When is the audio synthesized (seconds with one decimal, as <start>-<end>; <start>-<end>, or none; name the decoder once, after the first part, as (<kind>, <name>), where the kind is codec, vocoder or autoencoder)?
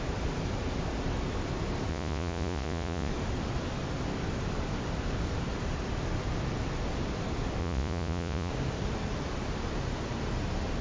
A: 1.9-3.1 (vocoder, Vocos); 7.6-8.5